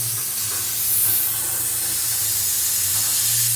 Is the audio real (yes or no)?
yes